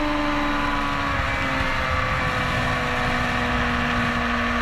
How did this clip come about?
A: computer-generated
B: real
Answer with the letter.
B